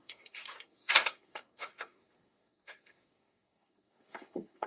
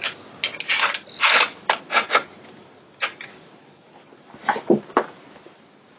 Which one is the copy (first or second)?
first